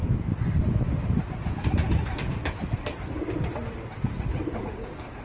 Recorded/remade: recorded